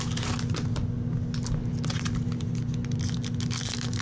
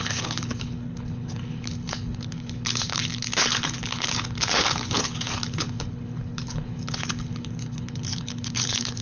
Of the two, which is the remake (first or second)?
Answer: second